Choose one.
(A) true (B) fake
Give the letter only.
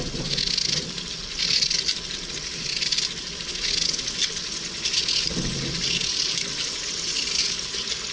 A